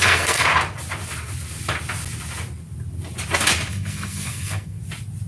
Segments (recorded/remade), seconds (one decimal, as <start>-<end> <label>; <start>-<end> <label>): 0.0-0.5 remade; 0.5-3.7 recorded; 3.7-4.8 remade; 4.8-5.3 recorded